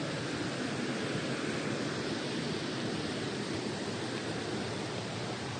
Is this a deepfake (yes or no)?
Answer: no